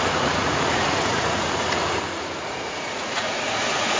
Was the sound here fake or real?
fake